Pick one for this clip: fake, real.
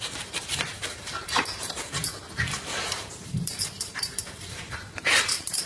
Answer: fake